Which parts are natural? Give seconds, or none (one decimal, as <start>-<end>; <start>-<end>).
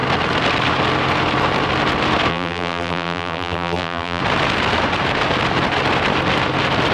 0.0-2.3; 4.2-6.9